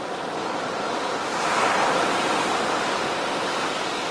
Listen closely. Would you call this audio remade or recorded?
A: recorded